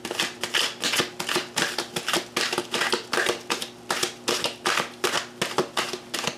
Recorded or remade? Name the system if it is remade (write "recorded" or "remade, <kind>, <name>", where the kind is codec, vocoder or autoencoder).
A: recorded